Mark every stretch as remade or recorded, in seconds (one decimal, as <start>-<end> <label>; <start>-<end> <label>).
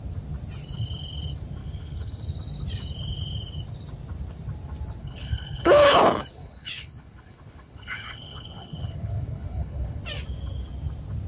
0.0-1.6 recorded; 1.6-2.2 remade; 2.2-5.0 recorded; 5.0-6.0 remade; 6.0-6.4 recorded; 6.4-10.0 remade; 10.0-11.3 recorded